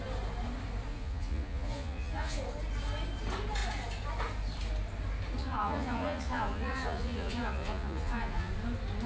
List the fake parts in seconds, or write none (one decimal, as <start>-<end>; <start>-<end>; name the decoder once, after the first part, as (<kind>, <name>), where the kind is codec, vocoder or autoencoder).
0.9-2.4 (vocoder, Vocos); 5.4-8.5